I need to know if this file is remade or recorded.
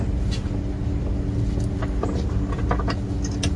recorded